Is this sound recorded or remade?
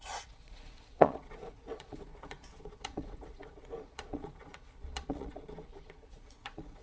remade